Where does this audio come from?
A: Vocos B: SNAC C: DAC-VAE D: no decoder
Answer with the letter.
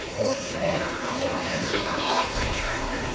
B